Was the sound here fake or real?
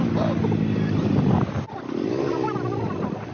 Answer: real